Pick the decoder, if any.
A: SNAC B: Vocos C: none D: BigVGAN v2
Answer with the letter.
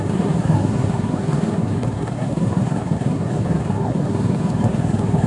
A